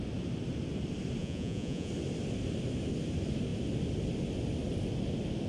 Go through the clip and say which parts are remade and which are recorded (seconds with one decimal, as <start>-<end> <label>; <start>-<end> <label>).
0.0-1.2 recorded; 1.2-1.9 remade; 1.9-5.5 recorded